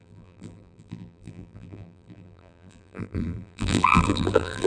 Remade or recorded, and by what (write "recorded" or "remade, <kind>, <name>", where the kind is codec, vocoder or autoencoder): remade, vocoder, BigVGAN v2